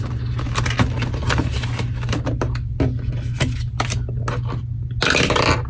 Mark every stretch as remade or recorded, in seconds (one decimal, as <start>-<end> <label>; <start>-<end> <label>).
0.0-5.7 recorded